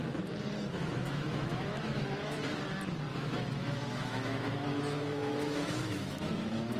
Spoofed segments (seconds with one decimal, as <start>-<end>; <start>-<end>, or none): 0.8-2.4; 3.1-6.8